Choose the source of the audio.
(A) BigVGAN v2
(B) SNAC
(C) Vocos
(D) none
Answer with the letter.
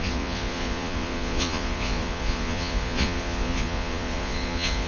C